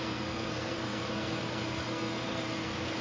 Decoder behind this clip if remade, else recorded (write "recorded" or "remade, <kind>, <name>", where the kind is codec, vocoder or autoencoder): remade, codec, SNAC